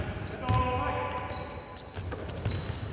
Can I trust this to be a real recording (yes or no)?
yes